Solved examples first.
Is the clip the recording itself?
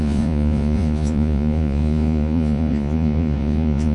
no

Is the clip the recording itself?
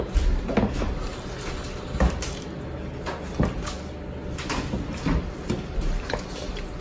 yes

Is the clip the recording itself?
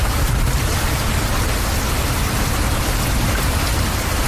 yes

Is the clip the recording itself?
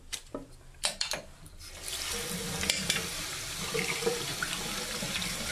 no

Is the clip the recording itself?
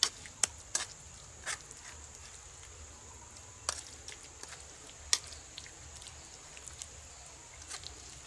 yes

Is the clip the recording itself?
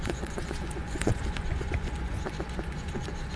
no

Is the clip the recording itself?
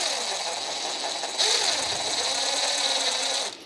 yes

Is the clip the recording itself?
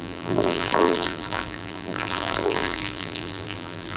no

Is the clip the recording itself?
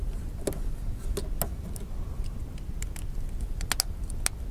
yes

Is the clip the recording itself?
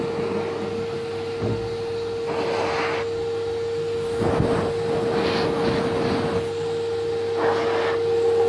yes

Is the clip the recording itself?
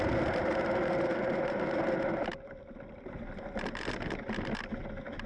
yes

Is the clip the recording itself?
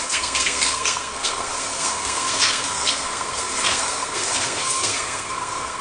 no